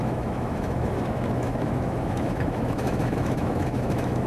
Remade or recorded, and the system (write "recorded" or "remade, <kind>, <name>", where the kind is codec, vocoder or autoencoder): remade, autoencoder, DAC-VAE